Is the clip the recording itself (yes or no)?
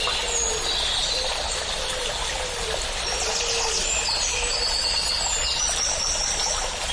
yes